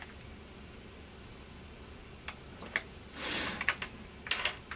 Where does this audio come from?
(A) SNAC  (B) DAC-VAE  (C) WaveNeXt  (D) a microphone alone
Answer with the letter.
D